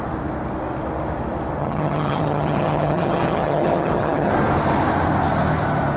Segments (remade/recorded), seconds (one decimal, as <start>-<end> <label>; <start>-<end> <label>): 0.0-1.6 recorded; 1.6-4.3 remade; 4.3-6.0 recorded